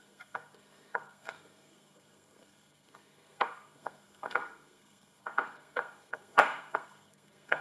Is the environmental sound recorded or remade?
remade